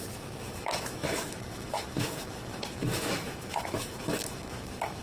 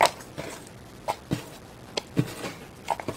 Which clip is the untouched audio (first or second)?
second